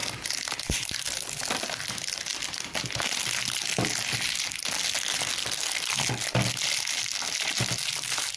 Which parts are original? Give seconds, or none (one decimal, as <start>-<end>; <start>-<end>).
0.0-8.4